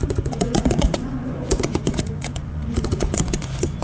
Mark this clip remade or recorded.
remade